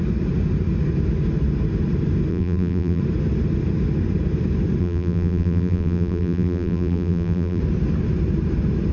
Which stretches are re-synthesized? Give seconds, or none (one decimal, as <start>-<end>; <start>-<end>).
2.3-3.0; 4.8-7.6